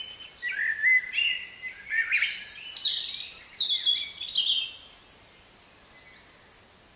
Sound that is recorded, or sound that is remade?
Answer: recorded